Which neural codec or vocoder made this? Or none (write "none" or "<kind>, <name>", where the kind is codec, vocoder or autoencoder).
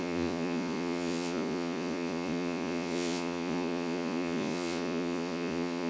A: vocoder, Vocos